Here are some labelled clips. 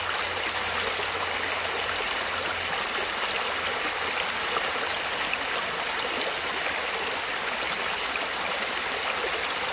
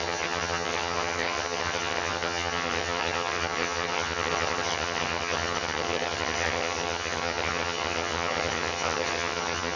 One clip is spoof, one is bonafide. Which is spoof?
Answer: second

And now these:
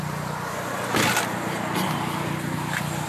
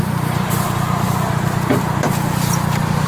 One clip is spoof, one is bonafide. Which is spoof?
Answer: second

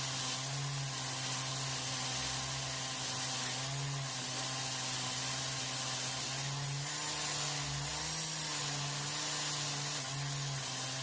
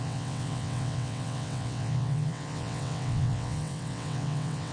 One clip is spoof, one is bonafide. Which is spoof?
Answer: second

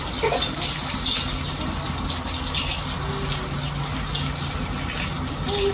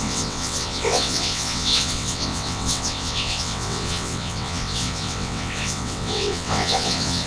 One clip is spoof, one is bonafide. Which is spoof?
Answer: second